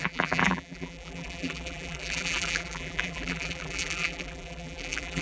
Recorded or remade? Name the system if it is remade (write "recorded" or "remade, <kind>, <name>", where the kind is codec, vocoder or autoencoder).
remade, vocoder, BigVGAN v2